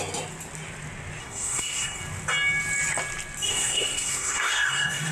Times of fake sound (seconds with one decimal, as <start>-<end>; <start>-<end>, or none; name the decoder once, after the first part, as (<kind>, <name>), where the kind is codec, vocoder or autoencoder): 1.2-2.0 (codec, SNAC); 3.5-5.1